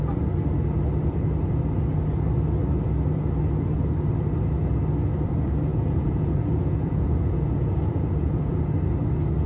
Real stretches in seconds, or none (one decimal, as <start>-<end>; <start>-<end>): 0.0-5.7; 8.6-9.5